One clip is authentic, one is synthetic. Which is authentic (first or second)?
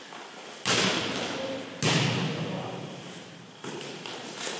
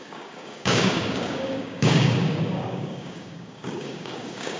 first